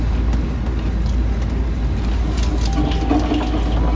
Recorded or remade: recorded